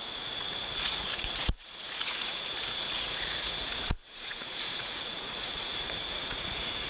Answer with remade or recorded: remade